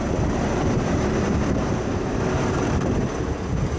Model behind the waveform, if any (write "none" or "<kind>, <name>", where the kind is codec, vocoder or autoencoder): vocoder, BigVGAN v2